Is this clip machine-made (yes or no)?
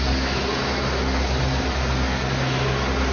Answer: no